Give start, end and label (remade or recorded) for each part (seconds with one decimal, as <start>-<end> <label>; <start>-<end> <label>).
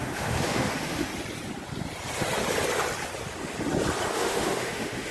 0.0-1.1 remade; 1.1-4.1 recorded; 4.1-5.1 remade